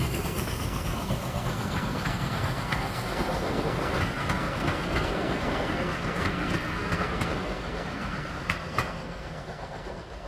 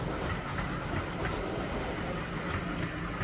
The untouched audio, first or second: second